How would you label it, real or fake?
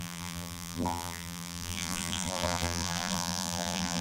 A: fake